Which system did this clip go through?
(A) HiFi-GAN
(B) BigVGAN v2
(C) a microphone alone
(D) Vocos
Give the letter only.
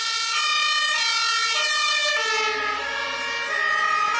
C